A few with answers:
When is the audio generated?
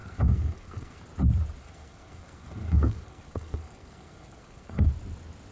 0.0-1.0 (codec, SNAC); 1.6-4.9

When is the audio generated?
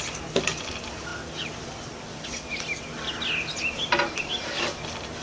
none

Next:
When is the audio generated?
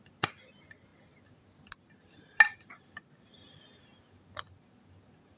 none